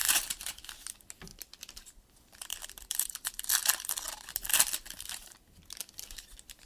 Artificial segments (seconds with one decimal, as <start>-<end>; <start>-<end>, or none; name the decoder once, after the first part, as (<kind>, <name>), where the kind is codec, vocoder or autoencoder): 0.0-0.7 (vocoder, BigVGAN v2); 1.3-2.1; 2.5-3.1